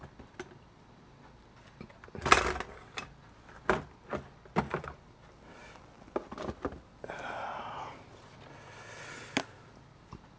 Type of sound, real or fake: real